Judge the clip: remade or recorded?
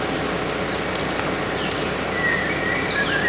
recorded